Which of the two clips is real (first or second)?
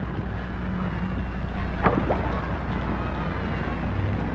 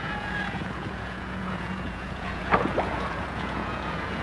first